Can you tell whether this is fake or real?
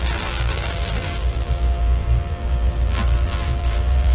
fake